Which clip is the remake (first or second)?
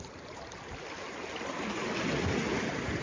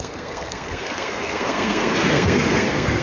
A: second